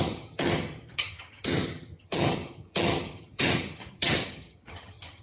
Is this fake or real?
fake